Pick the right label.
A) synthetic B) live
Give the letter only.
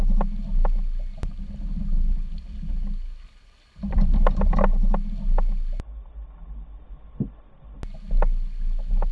B